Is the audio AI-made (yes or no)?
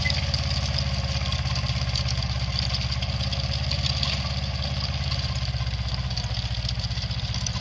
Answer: no